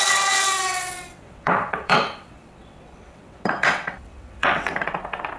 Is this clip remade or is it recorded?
remade